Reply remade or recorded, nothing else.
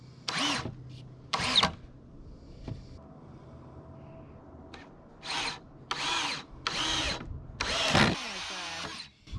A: recorded